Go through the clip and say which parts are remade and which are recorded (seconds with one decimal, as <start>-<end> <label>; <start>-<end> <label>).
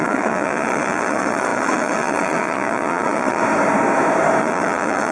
0.0-3.4 remade; 3.4-4.4 recorded; 4.4-5.1 remade